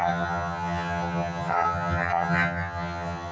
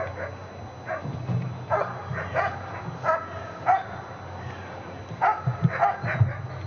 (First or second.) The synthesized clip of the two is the first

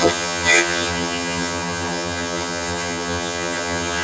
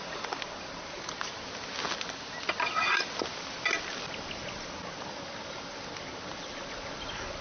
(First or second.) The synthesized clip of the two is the first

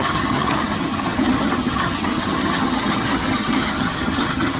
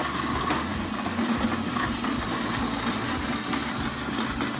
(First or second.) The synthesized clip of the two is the first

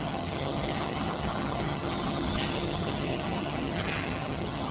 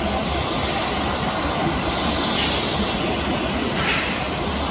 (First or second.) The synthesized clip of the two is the first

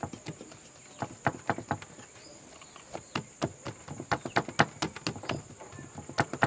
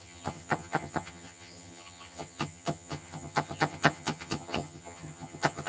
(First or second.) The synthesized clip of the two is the second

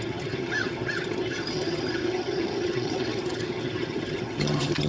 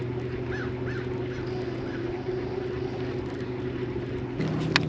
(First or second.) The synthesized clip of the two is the first